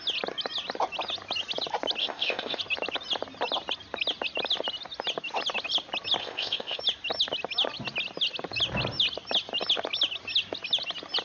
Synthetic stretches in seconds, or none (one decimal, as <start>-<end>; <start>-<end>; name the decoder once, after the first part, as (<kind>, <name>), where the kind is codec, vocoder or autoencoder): 2.0-2.6 (codec, ZipCodec); 6.2-6.8